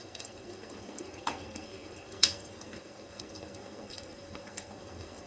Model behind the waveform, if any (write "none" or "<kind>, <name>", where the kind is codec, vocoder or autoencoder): codec, SNAC